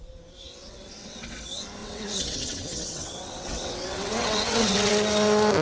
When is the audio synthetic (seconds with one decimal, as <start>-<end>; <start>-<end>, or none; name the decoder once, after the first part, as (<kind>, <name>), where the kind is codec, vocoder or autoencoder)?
0.6-1.4 (vocoder, WaveNeXt); 1.8-4.9